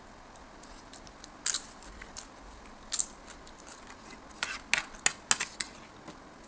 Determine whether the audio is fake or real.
real